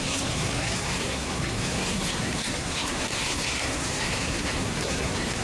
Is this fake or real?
fake